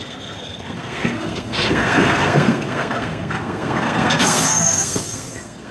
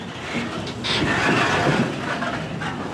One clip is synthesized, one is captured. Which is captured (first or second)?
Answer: second